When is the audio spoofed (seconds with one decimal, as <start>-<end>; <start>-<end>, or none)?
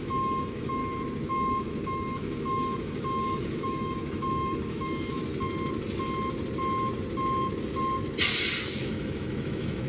0.0-0.8; 1.3-5.2; 8.7-9.9